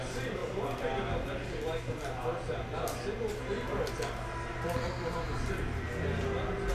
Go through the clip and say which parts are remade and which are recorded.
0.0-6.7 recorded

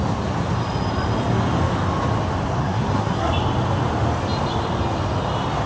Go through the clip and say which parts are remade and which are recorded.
0.0-2.6 recorded; 2.6-3.3 remade; 3.3-5.7 recorded